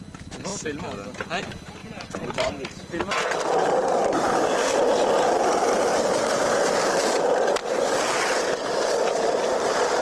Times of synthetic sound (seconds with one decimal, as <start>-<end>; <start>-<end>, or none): 1.8-2.5